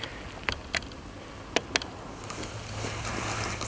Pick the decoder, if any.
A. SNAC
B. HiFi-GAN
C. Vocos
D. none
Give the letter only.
D